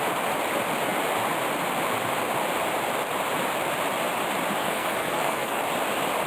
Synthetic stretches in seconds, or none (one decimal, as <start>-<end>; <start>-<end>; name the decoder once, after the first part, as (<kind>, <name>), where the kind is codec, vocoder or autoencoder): 4.6-5.6 (codec, SNAC)